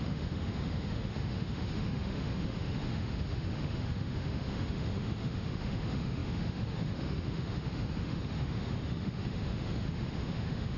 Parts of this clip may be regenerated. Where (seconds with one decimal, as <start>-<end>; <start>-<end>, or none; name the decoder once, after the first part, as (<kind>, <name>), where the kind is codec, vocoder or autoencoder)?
0.0-10.8 (autoencoder, DAC-VAE)